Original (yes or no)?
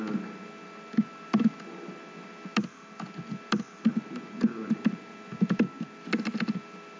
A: yes